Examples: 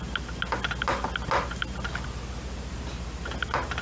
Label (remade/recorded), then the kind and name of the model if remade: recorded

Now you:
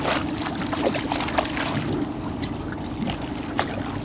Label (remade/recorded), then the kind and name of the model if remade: recorded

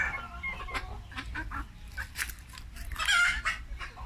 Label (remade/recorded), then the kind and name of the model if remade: recorded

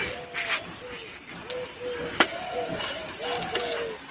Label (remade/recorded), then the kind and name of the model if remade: recorded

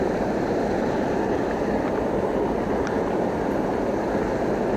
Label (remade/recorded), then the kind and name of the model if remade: recorded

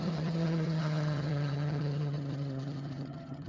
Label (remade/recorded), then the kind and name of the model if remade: remade, vocoder, HiFi-GAN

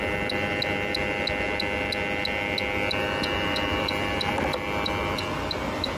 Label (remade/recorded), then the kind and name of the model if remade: recorded